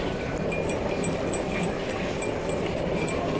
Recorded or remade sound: recorded